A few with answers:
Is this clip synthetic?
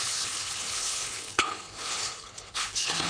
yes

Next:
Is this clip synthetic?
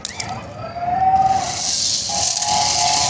no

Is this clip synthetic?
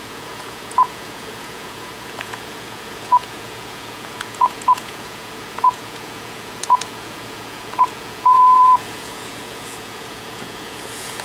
yes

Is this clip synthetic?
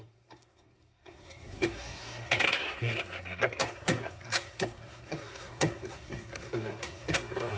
yes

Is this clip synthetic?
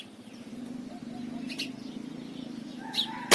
no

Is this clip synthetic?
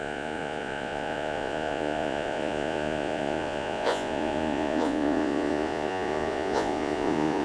yes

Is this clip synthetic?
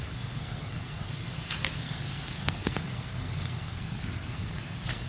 yes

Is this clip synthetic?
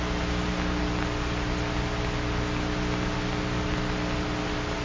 no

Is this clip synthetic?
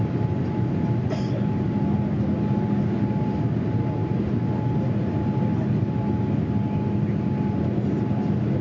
no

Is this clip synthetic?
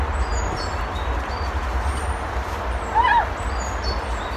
no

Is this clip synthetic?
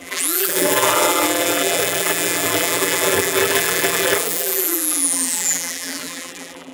yes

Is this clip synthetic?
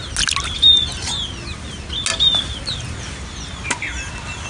no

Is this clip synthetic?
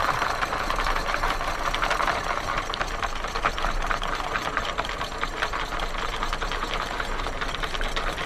yes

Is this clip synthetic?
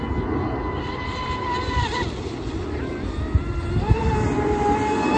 no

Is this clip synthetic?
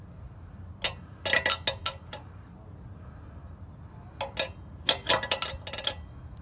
no